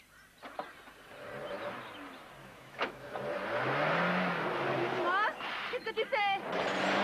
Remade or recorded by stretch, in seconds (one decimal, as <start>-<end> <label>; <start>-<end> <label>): 0.0-2.4 recorded; 2.4-3.1 remade; 3.1-7.0 recorded